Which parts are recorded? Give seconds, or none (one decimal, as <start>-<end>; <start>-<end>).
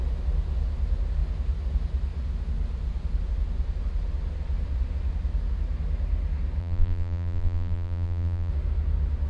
0.0-6.6; 8.5-9.3